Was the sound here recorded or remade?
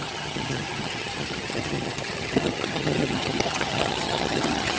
remade